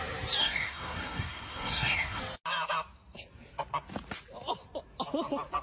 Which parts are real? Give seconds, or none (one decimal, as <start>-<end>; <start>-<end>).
0.0-0.4; 2.2-5.6

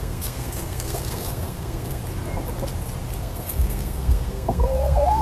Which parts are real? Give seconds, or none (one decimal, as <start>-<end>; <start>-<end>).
2.0-3.2

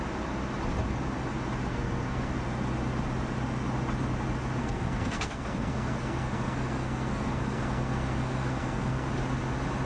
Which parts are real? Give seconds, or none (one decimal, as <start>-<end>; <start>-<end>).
0.0-1.7; 2.3-4.6; 9.1-9.9

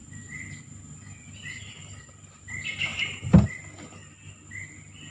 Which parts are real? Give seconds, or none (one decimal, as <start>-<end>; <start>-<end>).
0.0-5.1

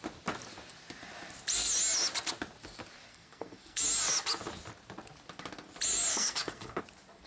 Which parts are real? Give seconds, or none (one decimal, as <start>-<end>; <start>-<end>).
0.0-3.1; 3.8-6.1; 6.8-7.3

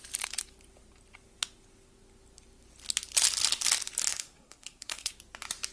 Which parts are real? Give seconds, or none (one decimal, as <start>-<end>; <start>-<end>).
0.0-4.1; 5.1-5.7

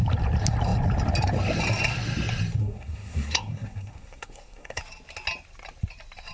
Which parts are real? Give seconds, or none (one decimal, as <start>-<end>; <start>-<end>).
0.0-2.6; 4.8-6.3

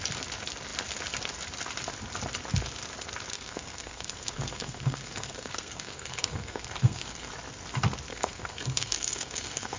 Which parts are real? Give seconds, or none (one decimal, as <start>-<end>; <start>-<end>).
0.0-3.3; 7.3-8.1